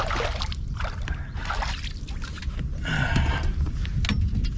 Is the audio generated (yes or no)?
no